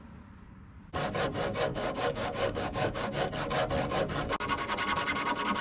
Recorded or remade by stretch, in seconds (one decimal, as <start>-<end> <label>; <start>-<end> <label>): 0.0-1.7 recorded; 1.7-3.3 remade; 3.3-5.6 recorded